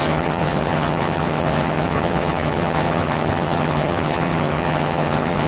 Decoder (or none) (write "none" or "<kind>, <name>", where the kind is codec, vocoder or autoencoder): vocoder, HiFi-GAN